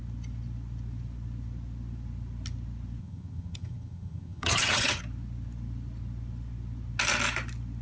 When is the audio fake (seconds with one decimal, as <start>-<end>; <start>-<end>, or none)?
3.0-5.0